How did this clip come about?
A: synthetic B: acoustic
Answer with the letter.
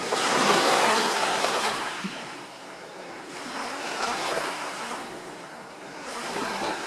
A